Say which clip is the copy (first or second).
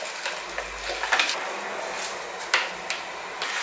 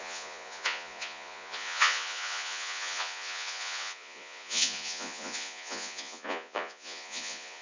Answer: second